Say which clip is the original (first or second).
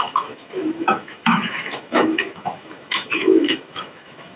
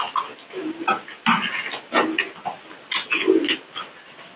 second